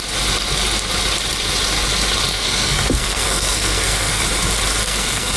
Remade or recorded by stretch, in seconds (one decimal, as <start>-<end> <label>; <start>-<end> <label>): 0.0-2.3 recorded; 2.3-4.2 remade; 4.2-4.8 recorded; 4.8-5.4 remade